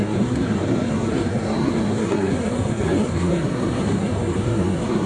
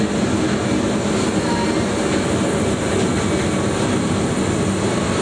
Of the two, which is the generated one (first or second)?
first